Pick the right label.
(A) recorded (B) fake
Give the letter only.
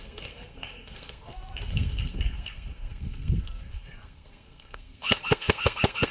B